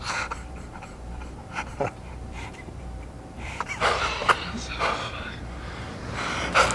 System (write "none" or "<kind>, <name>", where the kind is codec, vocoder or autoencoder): vocoder, BigVGAN v2